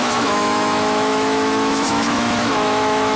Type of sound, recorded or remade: remade